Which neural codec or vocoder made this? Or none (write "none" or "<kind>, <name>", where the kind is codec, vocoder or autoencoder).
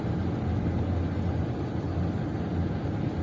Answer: none